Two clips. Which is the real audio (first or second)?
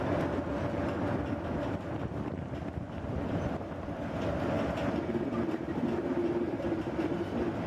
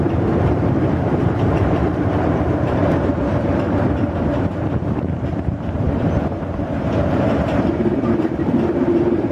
first